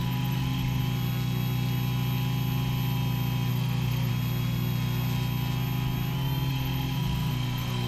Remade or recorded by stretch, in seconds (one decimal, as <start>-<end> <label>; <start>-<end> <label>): 0.0-0.8 remade; 0.8-3.5 recorded; 3.5-4.1 remade; 4.1-6.5 recorded; 6.5-7.9 remade